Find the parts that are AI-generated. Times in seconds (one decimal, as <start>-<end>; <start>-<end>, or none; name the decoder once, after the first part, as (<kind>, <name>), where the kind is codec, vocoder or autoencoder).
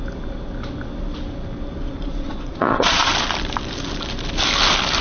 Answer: 1.9-3.1 (vocoder, Vocos)